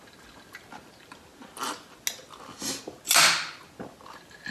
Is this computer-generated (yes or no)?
no